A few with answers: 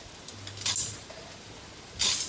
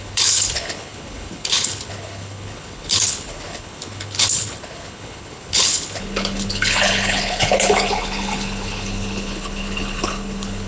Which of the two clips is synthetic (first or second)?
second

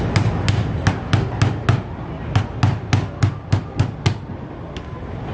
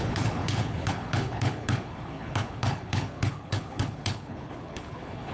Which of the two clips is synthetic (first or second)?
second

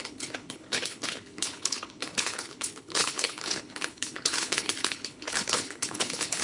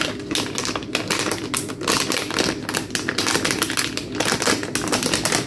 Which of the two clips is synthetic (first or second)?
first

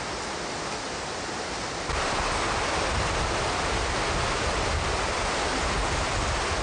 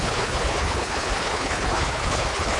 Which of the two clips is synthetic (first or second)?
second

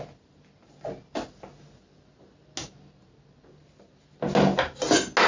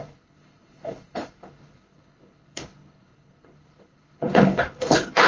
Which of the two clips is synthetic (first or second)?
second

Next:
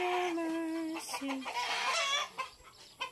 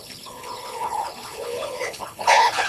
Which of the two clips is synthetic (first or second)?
second